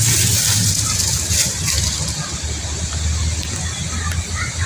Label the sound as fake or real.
real